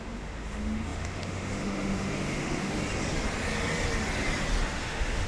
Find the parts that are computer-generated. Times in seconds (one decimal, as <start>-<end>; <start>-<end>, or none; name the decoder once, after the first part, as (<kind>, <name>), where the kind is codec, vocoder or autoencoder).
0.0-2.8 (autoencoder, DAC-VAE); 4.8-5.3